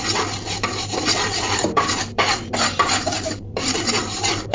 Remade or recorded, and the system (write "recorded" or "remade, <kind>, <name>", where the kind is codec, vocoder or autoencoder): remade, vocoder, BigVGAN v2